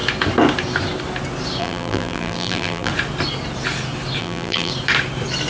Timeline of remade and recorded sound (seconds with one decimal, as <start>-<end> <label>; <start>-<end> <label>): 0.0-1.6 recorded; 1.6-2.9 remade; 2.9-4.2 recorded; 4.2-4.7 remade; 4.7-5.5 recorded

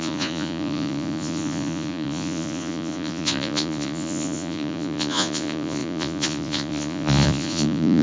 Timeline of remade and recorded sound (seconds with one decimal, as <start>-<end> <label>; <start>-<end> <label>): 0.0-8.0 remade

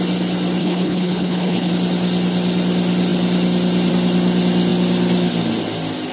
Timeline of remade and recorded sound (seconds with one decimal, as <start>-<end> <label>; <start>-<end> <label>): 0.0-0.6 recorded; 0.6-1.7 remade; 1.7-6.1 recorded